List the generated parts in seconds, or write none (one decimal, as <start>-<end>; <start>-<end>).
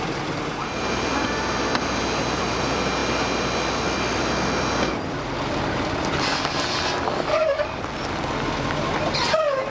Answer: 7.3-7.8